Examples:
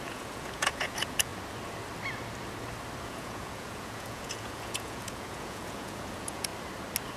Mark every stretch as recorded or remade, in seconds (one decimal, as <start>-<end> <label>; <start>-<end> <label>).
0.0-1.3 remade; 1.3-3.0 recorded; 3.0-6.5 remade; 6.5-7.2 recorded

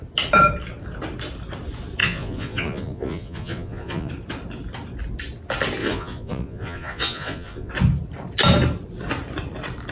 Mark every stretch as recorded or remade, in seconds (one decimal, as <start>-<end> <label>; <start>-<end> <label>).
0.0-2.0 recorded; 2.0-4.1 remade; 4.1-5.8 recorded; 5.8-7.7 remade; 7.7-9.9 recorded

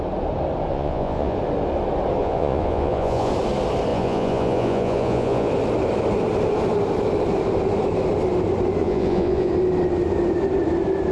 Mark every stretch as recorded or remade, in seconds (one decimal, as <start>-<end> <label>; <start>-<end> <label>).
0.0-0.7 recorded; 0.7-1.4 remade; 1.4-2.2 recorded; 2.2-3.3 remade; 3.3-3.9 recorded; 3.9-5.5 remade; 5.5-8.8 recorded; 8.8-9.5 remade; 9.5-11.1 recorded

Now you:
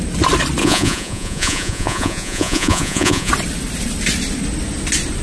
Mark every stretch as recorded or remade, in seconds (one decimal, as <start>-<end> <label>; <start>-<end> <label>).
0.0-0.6 recorded; 0.6-3.3 remade; 3.3-5.2 recorded

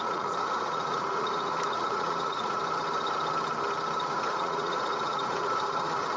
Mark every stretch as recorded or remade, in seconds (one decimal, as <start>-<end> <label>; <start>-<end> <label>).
0.0-2.6 remade; 2.6-4.0 recorded; 4.0-6.2 remade

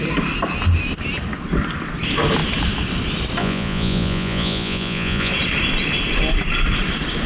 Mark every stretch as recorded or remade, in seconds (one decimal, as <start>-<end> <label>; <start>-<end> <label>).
0.0-3.4 recorded; 3.4-5.3 remade; 5.3-7.3 recorded

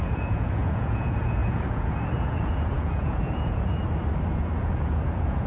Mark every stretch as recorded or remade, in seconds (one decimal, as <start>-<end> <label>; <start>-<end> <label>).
0.0-3.8 remade; 3.8-4.3 recorded; 4.3-5.5 remade